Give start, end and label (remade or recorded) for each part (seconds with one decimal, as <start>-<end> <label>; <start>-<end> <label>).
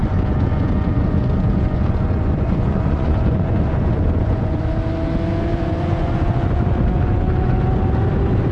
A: 0.0-4.6 remade; 4.6-5.5 recorded; 5.5-7.6 remade; 7.6-8.5 recorded